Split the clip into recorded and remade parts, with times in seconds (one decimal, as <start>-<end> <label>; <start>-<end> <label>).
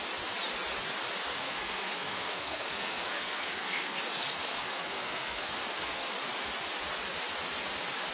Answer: 0.0-1.3 recorded; 1.3-4.0 remade; 4.0-4.4 recorded; 4.4-6.1 remade; 6.1-8.1 recorded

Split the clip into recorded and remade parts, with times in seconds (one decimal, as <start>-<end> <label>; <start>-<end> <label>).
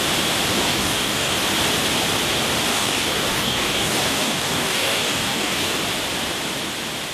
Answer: 0.0-0.5 recorded; 0.5-1.3 remade; 1.3-2.7 recorded; 2.7-5.8 remade; 5.8-7.1 recorded